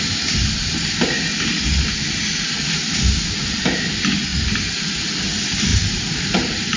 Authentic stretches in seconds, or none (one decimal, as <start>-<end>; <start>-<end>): 0.0-4.3; 5.1-5.7